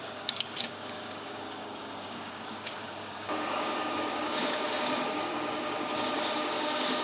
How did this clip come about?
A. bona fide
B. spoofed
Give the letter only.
B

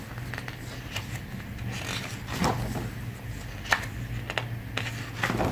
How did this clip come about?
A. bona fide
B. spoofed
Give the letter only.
A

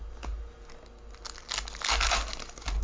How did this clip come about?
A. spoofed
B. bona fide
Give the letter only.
B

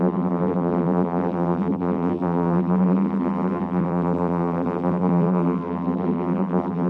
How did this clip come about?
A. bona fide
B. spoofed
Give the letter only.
B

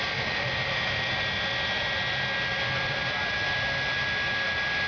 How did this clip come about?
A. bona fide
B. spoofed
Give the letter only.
A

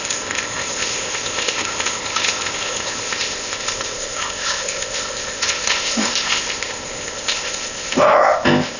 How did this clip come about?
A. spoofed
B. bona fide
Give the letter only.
A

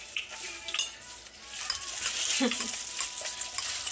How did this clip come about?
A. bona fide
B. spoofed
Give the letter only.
A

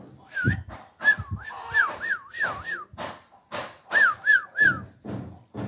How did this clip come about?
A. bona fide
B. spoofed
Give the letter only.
A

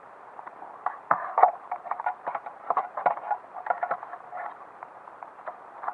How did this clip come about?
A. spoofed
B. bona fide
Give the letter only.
A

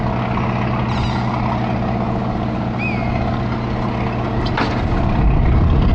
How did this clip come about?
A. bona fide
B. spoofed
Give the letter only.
A